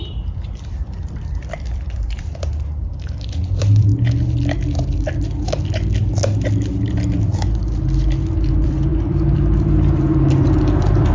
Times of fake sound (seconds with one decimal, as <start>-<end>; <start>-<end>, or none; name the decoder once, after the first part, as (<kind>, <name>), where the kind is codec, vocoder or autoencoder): 0.0-3.9 (vocoder, BigVGAN v2); 8.5-11.1